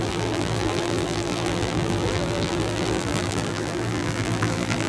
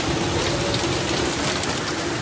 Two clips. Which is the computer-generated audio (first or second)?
first